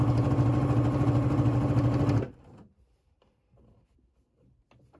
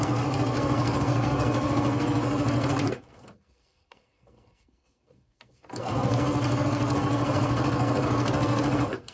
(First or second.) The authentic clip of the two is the first